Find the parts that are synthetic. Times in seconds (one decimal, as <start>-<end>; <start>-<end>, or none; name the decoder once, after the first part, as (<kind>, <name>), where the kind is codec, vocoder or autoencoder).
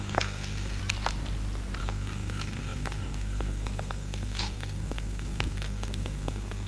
0.0-0.8 (codec, SNAC); 1.8-6.7